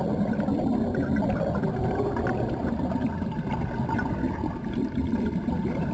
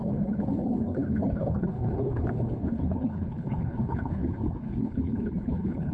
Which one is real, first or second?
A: first